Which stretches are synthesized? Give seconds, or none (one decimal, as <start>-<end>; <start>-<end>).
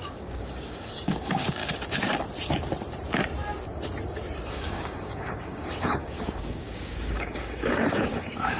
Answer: 0.0-1.6; 4.5-8.6